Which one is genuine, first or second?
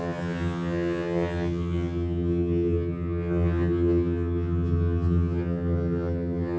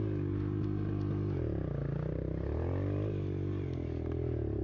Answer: second